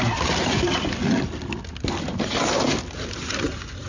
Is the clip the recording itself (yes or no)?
yes